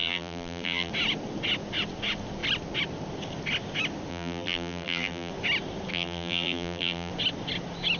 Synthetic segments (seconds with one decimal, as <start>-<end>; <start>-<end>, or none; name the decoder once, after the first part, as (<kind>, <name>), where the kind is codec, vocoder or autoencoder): 0.0-0.9 (vocoder, BigVGAN v2); 4.1-5.3; 5.9-7.1